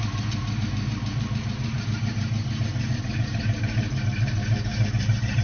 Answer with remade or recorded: remade